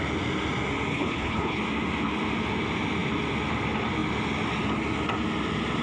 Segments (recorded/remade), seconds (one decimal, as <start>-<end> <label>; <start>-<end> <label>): 0.0-0.9 recorded; 0.9-1.6 remade; 1.6-5.8 recorded